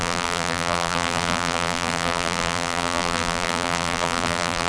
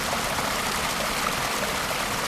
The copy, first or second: first